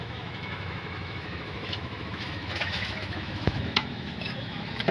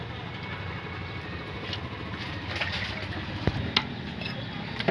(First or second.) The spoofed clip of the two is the first